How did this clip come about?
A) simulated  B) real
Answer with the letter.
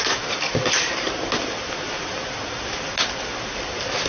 B